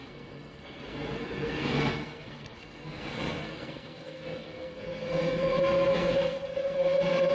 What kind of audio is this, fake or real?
fake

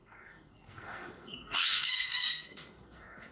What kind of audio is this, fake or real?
fake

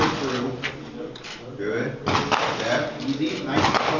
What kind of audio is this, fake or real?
real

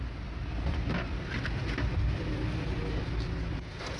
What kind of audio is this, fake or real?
real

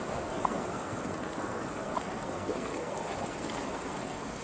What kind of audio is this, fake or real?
fake